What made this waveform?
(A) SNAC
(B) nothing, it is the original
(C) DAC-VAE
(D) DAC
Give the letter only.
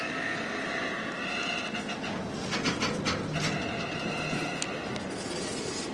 B